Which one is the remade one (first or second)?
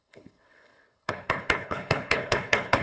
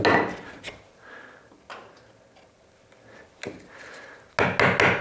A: first